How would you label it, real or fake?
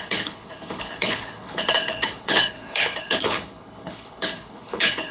fake